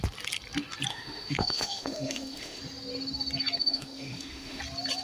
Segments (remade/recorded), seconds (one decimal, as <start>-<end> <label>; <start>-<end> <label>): 0.0-0.9 recorded; 0.9-2.6 remade; 2.6-3.6 recorded; 3.6-4.6 remade; 4.6-5.0 recorded